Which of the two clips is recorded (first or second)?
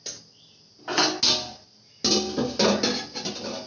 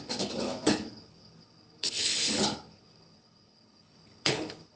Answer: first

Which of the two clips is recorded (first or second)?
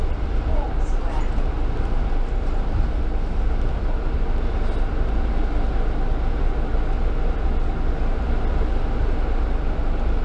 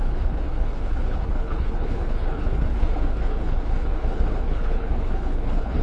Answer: first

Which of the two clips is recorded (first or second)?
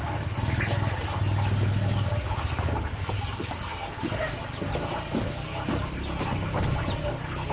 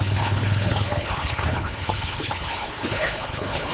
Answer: first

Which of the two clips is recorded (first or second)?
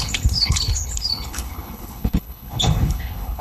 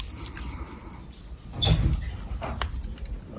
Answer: second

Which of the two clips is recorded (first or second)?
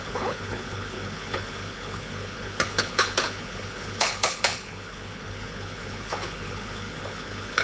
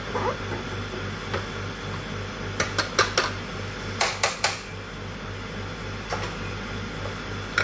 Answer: second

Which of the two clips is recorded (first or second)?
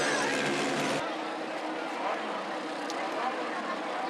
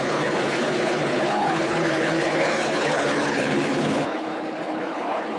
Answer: first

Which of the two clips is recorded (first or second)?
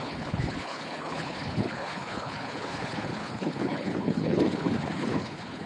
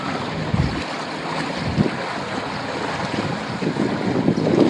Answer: second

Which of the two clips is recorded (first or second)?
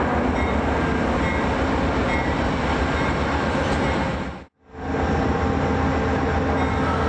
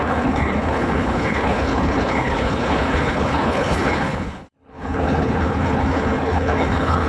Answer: first